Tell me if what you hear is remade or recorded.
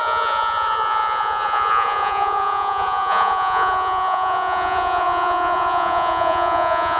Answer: remade